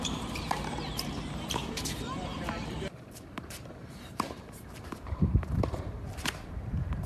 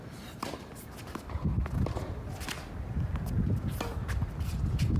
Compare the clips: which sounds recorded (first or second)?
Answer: second